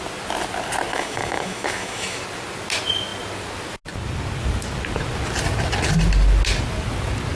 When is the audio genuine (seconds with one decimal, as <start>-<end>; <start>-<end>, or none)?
0.0-0.9; 2.2-7.3